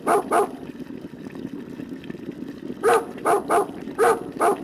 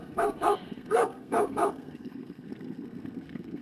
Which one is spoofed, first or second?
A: second